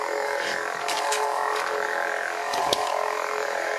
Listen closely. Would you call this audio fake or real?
fake